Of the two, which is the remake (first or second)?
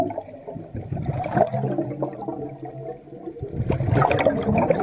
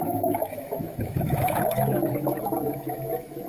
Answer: second